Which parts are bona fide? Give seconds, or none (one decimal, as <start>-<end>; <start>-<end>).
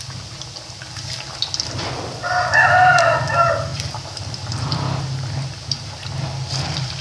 0.0-7.0